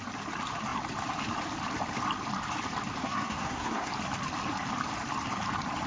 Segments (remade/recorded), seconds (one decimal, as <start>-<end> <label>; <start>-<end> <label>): 0.0-3.0 recorded; 3.0-3.9 remade; 3.9-5.9 recorded